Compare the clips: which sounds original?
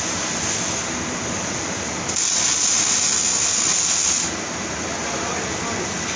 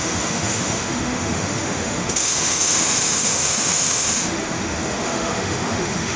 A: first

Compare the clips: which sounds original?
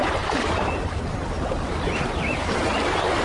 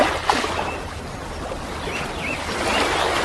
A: second